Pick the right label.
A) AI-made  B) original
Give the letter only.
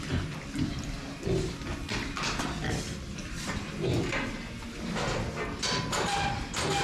B